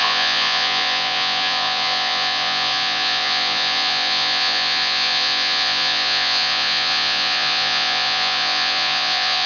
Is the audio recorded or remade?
remade